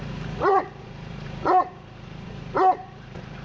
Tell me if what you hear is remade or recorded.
remade